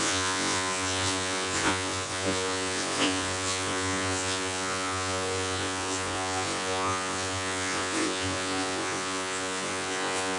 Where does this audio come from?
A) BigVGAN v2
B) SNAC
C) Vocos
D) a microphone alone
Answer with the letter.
C